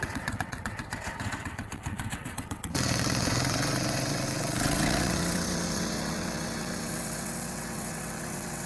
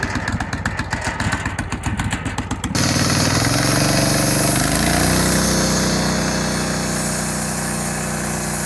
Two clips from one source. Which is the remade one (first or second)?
first